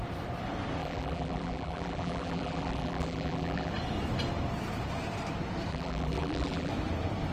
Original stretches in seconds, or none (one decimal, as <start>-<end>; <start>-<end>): 0.0-0.8; 3.7-5.7; 6.7-7.3